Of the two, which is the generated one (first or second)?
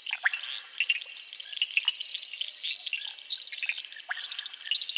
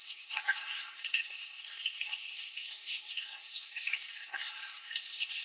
second